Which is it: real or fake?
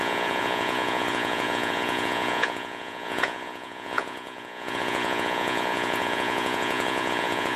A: fake